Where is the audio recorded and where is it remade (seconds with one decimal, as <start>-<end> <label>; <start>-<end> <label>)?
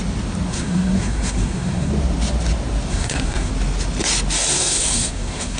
0.0-0.5 recorded; 0.5-1.9 remade; 1.9-2.9 recorded; 2.9-3.5 remade; 3.5-4.5 recorded; 4.5-5.6 remade